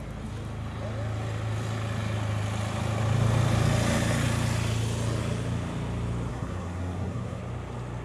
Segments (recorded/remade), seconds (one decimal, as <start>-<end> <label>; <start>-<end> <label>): 0.0-6.3 recorded; 6.3-7.4 remade; 7.4-8.0 recorded